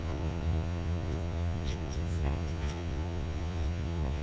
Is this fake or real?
fake